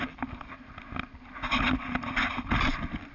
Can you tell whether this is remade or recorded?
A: recorded